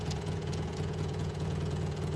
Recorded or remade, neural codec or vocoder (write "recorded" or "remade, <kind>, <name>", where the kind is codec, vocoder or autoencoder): remade, vocoder, Vocos